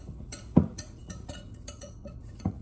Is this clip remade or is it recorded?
remade